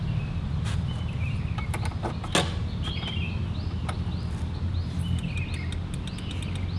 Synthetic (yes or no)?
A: no